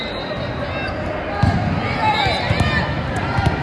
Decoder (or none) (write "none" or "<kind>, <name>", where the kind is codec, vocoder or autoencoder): none